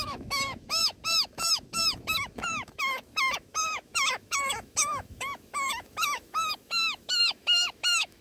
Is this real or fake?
fake